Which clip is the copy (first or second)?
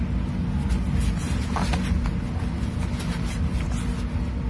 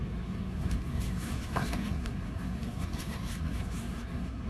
second